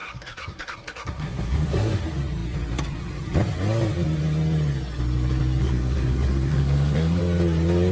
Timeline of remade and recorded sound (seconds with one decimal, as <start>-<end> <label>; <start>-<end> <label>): 0.0-2.0 remade; 2.0-5.6 recorded; 5.6-7.2 remade; 7.2-7.9 recorded